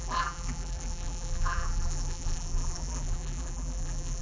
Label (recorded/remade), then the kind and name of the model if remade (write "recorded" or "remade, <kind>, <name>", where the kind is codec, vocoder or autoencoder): remade, vocoder, BigVGAN v2